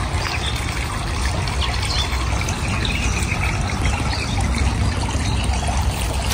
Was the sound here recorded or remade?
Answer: recorded